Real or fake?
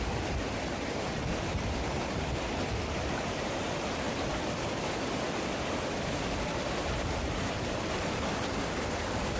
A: real